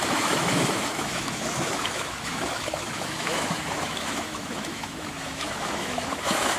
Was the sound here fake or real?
fake